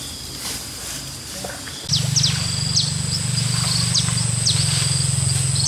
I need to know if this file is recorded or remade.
recorded